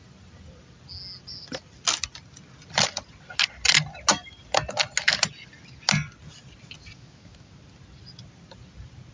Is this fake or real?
real